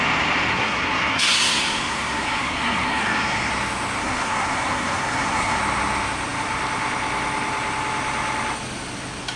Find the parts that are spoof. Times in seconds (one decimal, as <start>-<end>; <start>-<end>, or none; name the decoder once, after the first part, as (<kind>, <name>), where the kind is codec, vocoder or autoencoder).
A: 0.5-3.5 (codec, SNAC); 4.0-5.6